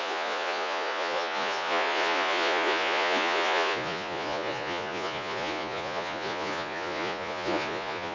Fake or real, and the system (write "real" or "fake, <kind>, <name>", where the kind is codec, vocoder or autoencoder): fake, vocoder, Vocos